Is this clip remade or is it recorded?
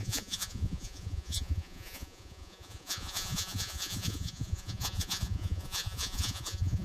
remade